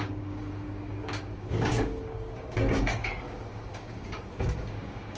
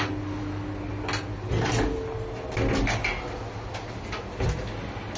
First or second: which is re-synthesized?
first